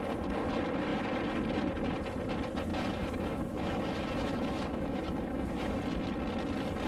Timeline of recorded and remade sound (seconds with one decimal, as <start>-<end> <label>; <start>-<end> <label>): 0.0-2.7 recorded; 2.7-5.8 remade; 5.8-6.9 recorded